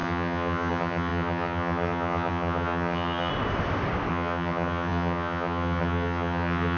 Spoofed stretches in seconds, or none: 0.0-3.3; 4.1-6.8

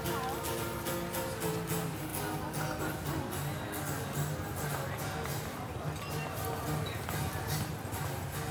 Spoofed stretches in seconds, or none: none

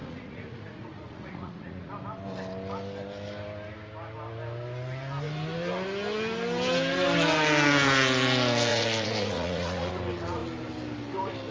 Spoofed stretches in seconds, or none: 0.0-1.9; 8.7-9.9

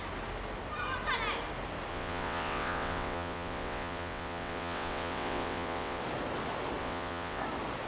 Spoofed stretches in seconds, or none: 1.9-6.0; 6.8-7.4

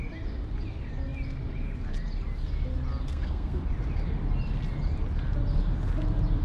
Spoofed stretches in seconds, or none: 3.1-3.6

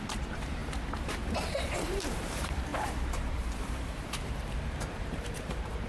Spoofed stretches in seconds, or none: 0.0-0.6; 1.4-5.9

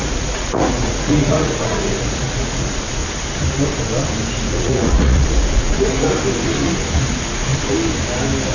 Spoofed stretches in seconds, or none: 0.0-3.0; 4.3-6.1; 7.1-7.5

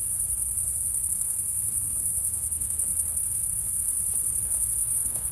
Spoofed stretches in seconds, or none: 0.0-3.9; 4.4-5.3